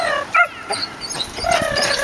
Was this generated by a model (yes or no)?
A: yes